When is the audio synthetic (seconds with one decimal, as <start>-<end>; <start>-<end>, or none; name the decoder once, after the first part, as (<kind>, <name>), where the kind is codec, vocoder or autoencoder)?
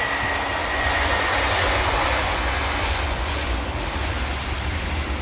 0.6-3.7 (vocoder, Vocos)